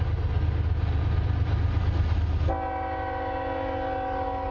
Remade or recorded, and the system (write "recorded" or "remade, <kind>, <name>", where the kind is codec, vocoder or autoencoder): recorded